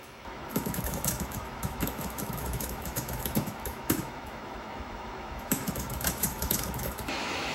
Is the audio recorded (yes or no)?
no